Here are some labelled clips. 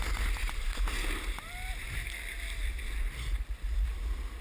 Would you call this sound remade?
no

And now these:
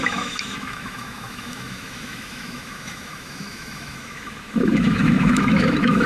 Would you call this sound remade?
yes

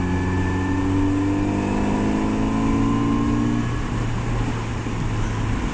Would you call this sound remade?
no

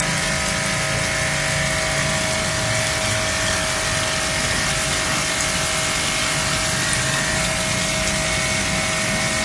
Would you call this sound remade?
no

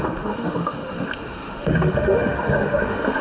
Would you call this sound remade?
yes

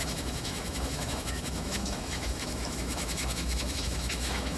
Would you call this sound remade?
yes